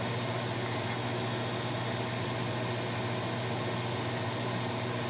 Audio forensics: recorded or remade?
recorded